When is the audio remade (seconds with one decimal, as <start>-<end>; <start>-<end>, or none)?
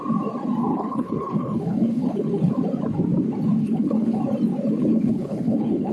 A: 0.7-2.5; 3.6-4.2; 4.8-5.9